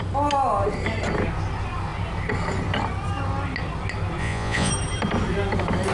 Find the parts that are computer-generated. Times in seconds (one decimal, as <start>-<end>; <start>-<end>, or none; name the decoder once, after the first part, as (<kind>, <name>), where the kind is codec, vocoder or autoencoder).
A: 4.2-4.7 (vocoder, Vocos)